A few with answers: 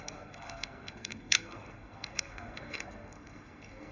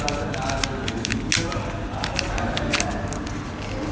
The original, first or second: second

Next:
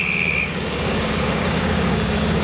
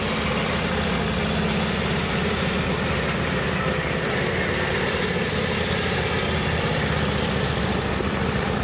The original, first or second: second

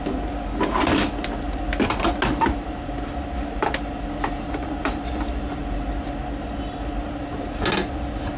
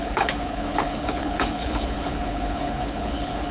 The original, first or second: first